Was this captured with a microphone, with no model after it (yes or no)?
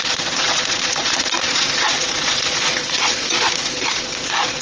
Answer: no